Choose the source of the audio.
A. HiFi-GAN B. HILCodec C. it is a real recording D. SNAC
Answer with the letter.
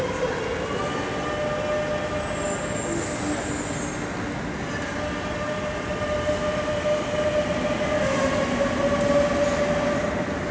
C